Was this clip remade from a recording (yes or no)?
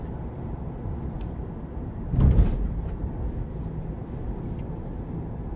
no